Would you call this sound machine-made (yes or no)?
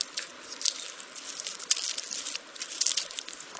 no